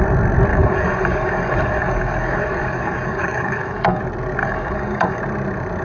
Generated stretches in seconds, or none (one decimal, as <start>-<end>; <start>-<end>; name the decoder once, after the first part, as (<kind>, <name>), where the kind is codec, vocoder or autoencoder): 0.5-4.0 (codec, DAC); 4.4-5.2